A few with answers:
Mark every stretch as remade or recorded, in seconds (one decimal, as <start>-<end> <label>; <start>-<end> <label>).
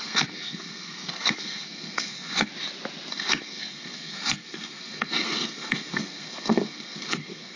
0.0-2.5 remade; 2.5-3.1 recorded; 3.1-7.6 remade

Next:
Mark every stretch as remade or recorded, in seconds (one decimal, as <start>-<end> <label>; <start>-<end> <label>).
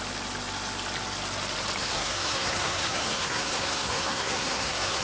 0.0-1.8 recorded; 1.8-5.0 remade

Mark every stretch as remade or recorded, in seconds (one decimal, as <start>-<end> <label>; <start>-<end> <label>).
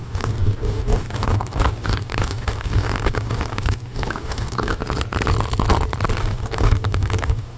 0.0-4.8 remade; 4.8-6.2 recorded; 6.2-7.6 remade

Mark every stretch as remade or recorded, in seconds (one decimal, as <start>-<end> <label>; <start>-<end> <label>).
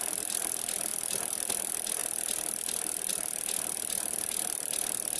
0.0-5.2 recorded